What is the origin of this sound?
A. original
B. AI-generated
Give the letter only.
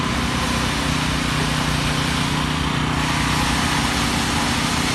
A